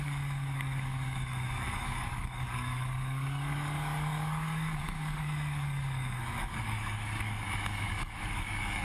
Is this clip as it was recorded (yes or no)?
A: no